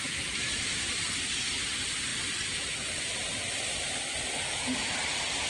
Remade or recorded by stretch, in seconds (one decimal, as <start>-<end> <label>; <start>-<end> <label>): 0.0-5.5 recorded